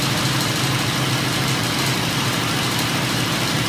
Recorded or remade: recorded